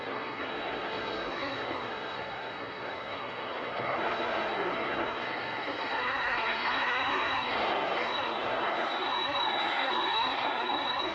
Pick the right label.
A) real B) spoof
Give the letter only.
B